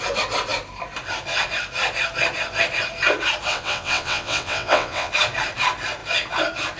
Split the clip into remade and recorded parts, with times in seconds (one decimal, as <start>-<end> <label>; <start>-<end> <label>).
0.0-3.5 recorded; 3.5-5.1 remade; 5.1-6.8 recorded